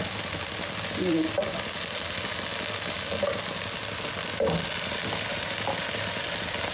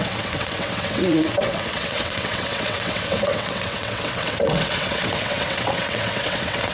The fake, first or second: second